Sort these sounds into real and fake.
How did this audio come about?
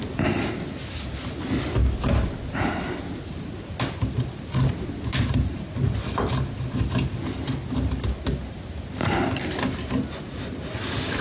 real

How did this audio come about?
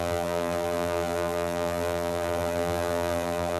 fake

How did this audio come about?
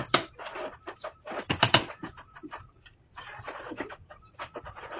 fake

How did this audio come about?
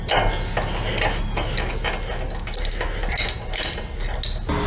real